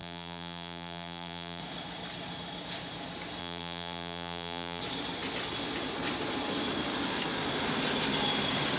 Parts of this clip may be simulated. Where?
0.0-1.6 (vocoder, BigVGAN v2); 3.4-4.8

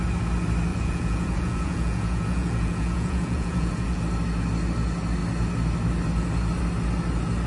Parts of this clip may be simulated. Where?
0.7-4.0 (vocoder, Vocos)

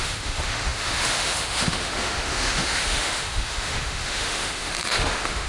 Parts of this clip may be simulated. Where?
0.0-5.5 (autoencoder, DAC-VAE)

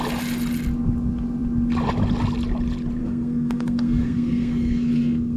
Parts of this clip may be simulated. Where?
3.0-5.4 (codec, SNAC)

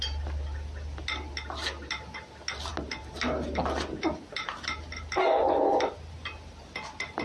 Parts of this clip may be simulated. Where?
none

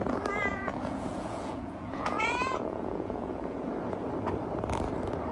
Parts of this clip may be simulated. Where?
0.5-3.7 (vocoder, Vocos)